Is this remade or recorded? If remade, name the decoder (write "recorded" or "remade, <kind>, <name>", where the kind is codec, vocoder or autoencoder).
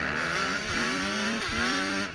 remade, vocoder, BigVGAN v2